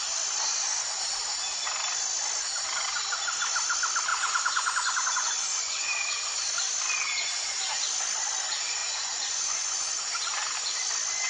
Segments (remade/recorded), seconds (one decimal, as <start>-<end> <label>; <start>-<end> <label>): 0.0-4.1 recorded; 4.1-5.9 remade; 5.9-8.8 recorded; 8.8-9.9 remade; 9.9-11.3 recorded